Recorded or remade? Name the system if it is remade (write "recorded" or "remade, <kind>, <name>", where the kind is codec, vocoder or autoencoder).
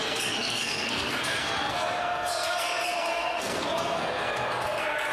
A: remade, codec, SNAC